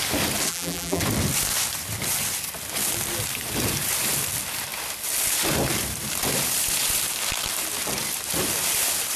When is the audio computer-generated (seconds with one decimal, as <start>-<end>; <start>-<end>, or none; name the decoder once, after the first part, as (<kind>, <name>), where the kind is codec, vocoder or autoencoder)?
0.5-1.0 (vocoder, BigVGAN v2)